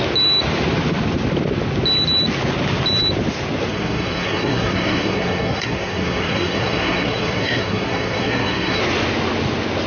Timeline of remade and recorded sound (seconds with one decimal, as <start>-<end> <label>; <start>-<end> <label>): 0.0-3.7 recorded; 3.7-8.8 remade; 8.8-9.9 recorded